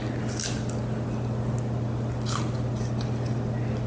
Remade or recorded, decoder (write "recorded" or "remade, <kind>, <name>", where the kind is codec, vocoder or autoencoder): recorded